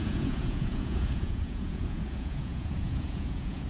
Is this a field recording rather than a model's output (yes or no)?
no